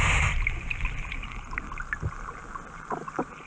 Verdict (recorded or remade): recorded